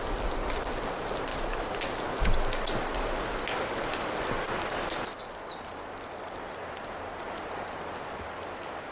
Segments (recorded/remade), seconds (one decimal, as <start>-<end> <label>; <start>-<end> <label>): 0.0-8.9 recorded